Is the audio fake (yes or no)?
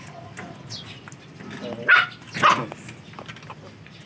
no